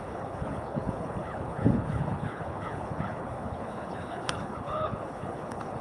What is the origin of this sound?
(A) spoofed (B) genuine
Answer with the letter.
A